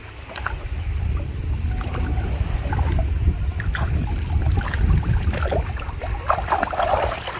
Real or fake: real